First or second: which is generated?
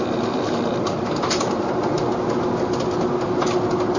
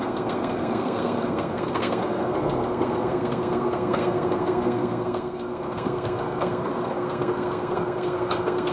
second